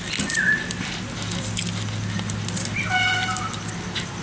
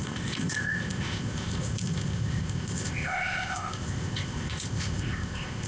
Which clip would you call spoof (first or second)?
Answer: second